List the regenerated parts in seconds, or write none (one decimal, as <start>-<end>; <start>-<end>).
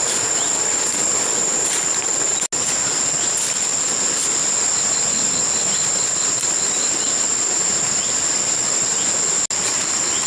none